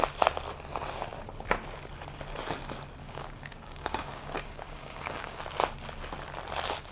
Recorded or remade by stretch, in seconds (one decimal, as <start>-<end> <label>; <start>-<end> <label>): 0.0-3.0 recorded; 3.0-5.4 remade; 5.4-6.9 recorded